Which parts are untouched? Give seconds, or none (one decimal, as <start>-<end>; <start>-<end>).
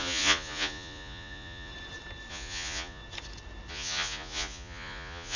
1.7-2.3; 3.0-3.7